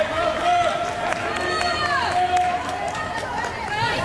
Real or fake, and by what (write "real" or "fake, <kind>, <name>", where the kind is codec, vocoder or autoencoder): real